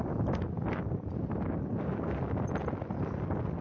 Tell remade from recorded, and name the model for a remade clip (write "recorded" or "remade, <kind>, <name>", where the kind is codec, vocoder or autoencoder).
recorded